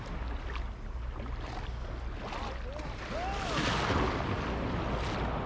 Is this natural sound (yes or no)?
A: yes